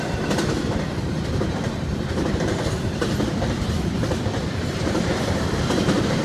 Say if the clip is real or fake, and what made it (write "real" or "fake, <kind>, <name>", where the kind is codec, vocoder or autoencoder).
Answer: fake, vocoder, BigVGAN v2